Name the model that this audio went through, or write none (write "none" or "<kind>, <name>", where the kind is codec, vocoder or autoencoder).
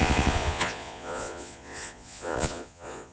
vocoder, Vocos